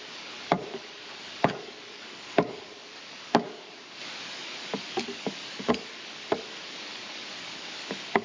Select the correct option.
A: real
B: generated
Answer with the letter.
B